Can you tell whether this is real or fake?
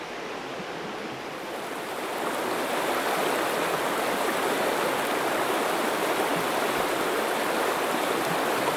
real